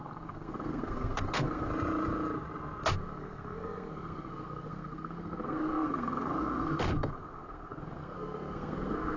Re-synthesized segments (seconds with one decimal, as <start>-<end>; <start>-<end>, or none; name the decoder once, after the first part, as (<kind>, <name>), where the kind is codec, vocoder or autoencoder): 0.0-1.7 (codec, SNAC); 2.9-9.2